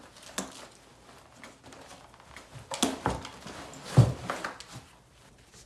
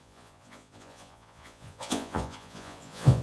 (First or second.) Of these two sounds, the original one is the first